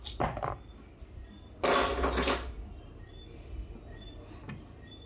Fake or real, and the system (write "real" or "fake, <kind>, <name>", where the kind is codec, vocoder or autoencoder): real